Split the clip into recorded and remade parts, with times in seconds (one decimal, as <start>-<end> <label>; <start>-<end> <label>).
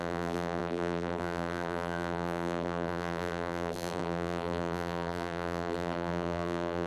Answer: 0.0-6.9 remade